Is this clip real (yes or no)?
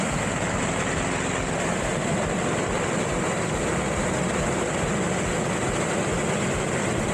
yes